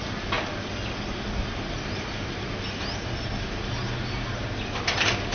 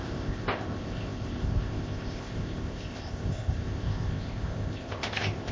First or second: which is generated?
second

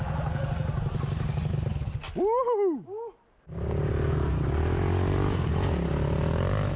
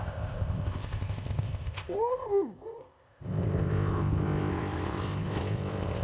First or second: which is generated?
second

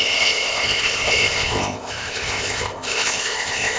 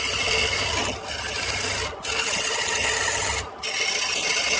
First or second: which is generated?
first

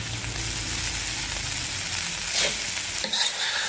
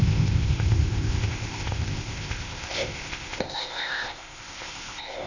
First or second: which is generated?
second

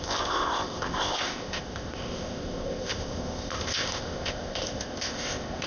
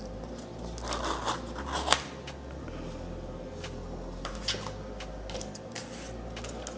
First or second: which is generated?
first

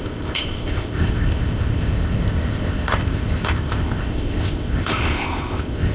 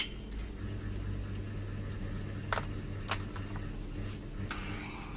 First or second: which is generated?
first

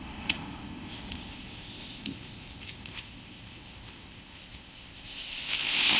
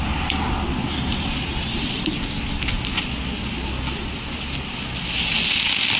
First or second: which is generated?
first